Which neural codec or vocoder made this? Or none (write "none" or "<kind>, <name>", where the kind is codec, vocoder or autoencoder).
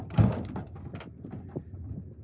none